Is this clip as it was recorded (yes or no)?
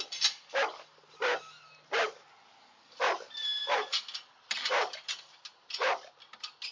yes